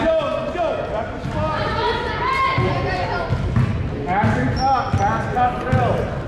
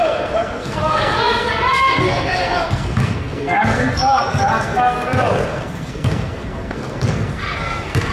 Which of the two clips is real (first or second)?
first